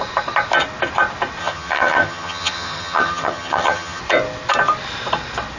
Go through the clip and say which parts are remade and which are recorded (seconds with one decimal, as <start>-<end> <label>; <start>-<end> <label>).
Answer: 0.0-1.4 recorded; 1.4-4.0 remade; 4.0-5.6 recorded